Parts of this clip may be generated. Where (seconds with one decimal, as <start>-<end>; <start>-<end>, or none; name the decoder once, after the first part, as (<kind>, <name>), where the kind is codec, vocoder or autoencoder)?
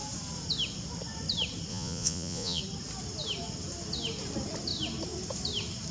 1.7-2.6 (vocoder, Vocos)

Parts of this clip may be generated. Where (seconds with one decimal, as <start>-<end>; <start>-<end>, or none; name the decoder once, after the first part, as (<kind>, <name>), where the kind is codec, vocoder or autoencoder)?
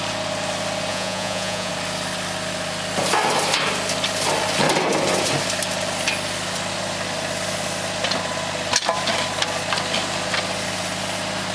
0.9-1.7 (vocoder, Vocos)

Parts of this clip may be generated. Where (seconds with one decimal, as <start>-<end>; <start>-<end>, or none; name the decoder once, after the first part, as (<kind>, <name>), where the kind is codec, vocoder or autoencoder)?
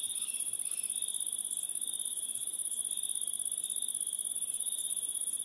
0.0-0.5 (vocoder, Vocos); 2.1-2.8; 4.3-5.4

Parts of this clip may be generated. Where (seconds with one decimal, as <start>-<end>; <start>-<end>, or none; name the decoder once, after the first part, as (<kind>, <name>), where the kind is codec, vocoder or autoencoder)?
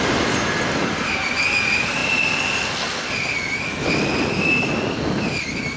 none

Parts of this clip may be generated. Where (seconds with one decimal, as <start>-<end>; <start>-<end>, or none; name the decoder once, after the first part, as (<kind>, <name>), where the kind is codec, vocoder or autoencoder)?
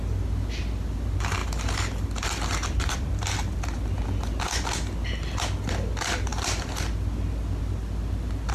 none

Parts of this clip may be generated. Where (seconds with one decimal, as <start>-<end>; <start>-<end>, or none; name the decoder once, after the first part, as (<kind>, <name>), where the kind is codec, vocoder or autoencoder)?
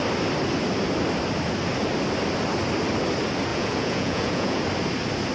3.5-4.6 (vocoder, Vocos)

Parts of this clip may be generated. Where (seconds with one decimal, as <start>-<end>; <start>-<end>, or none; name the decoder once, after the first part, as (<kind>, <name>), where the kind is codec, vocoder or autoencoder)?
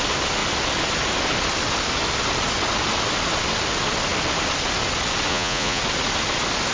5.3-5.8 (vocoder, Vocos)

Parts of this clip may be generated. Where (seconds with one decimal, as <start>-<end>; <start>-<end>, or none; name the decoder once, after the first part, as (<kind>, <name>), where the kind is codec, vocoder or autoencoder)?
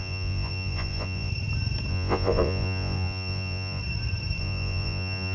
0.0-1.3 (vocoder, Vocos); 1.9-3.8; 4.4-5.3